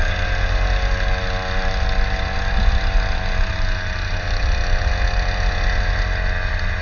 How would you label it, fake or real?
real